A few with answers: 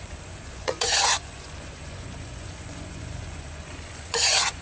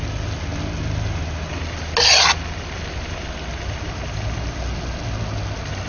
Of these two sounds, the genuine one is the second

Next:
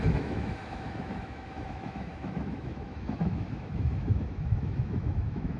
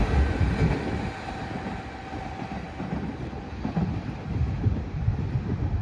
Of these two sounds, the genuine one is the second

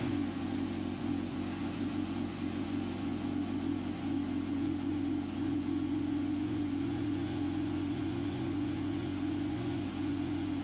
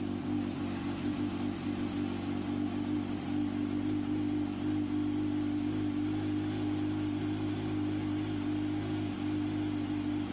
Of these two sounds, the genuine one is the second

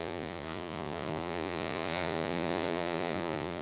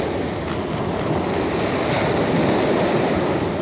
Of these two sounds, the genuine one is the second